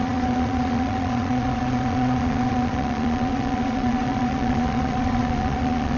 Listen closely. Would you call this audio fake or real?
fake